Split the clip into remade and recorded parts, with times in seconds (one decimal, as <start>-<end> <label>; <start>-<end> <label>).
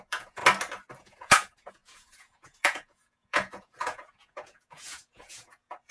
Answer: 0.0-0.4 remade; 0.4-1.0 recorded; 1.0-5.9 remade